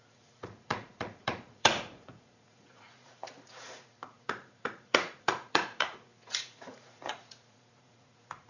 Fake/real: fake